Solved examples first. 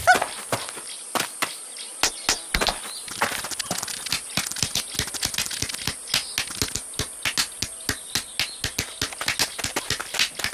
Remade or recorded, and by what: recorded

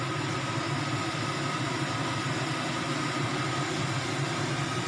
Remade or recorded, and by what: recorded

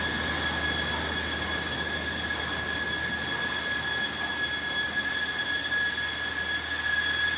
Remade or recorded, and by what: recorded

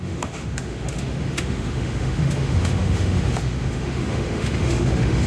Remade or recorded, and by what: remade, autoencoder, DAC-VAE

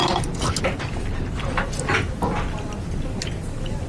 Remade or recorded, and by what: recorded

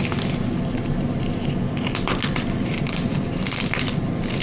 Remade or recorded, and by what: recorded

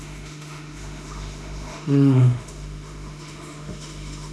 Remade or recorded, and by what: remade, autoencoder, DAC-VAE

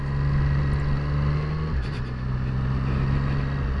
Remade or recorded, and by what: recorded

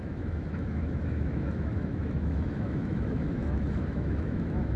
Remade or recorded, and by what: remade, autoencoder, DAC-VAE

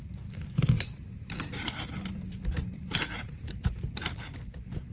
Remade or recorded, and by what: recorded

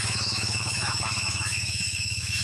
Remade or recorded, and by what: remade, autoencoder, DAC-VAE